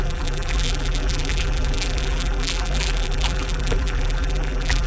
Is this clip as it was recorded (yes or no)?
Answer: no